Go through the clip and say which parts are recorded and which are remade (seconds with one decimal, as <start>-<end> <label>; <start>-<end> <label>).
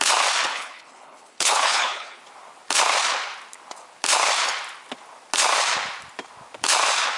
0.0-0.5 recorded; 0.5-2.2 remade; 2.2-7.2 recorded